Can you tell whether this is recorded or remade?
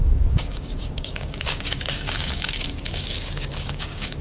remade